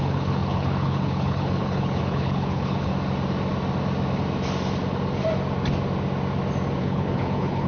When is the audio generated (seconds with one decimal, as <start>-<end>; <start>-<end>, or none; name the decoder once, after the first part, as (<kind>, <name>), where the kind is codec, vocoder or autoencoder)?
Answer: 0.0-2.9 (codec, HILCodec); 6.8-7.7